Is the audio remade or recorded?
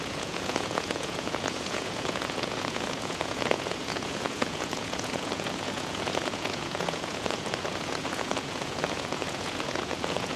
remade